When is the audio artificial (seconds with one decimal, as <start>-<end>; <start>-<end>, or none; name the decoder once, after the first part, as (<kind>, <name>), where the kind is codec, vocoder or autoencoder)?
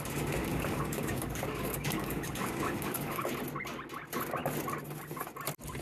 0.4-3.3 (codec, DAC)